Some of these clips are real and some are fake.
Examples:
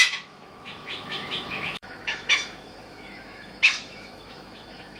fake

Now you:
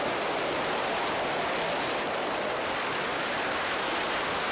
real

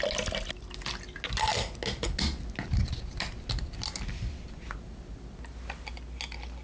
real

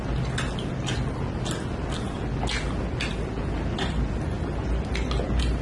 real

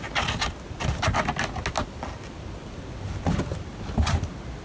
real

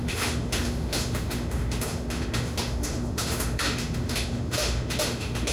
fake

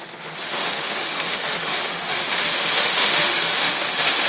fake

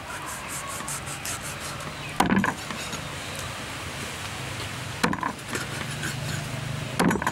real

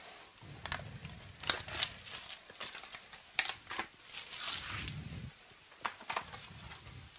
real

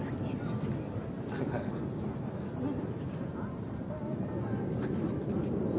real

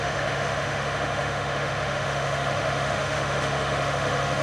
fake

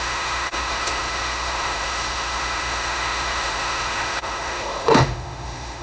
fake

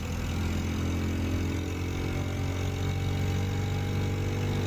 real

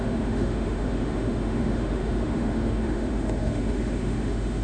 fake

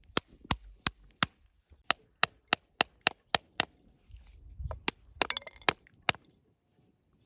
real